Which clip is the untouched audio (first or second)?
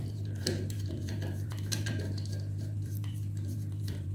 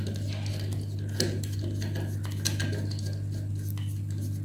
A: second